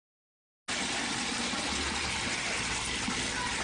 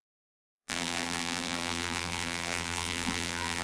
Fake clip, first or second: second